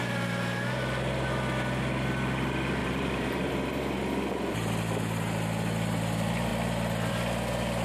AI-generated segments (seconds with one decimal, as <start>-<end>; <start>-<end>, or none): 2.8-3.5